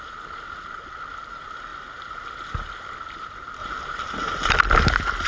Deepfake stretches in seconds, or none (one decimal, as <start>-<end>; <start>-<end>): none